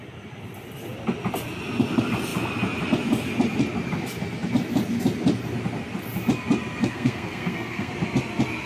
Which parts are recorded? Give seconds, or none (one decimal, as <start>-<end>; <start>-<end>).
0.0-6.8; 7.9-8.7